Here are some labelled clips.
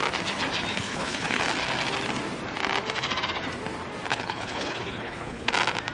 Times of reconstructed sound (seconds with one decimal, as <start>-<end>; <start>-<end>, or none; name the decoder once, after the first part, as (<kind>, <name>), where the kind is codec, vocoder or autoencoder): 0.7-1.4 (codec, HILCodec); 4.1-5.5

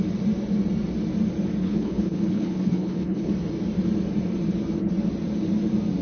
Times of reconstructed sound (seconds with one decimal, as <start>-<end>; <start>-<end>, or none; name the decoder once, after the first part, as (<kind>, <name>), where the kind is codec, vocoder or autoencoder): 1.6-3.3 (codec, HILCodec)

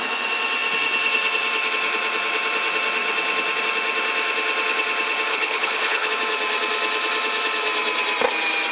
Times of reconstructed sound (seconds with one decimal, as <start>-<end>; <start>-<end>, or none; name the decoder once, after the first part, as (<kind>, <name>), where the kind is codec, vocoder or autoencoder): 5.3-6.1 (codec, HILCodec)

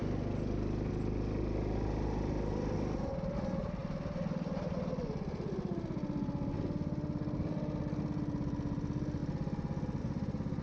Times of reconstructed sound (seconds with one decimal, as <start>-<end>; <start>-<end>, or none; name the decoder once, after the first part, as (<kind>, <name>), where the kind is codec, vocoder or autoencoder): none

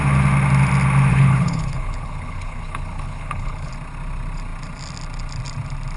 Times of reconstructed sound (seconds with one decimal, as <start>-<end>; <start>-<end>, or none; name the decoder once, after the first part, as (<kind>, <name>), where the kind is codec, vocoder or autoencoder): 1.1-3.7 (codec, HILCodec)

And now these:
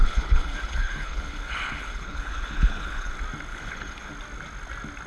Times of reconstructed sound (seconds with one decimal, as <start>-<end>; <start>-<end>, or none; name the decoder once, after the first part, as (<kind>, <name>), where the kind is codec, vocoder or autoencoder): 0.0-3.1 (codec, HILCodec); 3.5-4.1